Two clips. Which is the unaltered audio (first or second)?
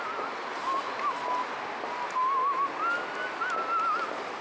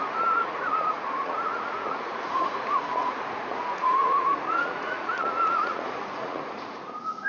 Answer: first